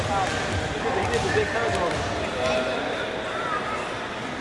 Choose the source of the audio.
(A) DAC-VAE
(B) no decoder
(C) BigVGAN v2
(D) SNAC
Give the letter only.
B